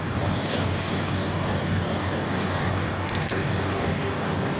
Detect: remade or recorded remade